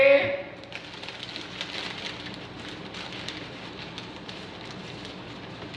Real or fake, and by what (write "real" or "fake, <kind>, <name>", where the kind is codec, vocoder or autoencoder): real